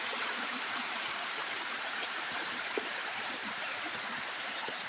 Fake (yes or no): yes